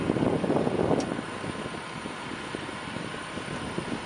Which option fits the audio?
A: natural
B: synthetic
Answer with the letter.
A